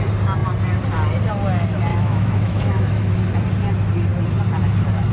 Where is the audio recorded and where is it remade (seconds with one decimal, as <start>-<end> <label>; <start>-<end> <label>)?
0.0-1.9 recorded; 1.9-3.2 remade; 3.2-5.1 recorded